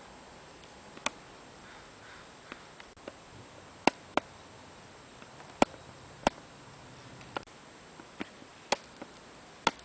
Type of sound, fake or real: real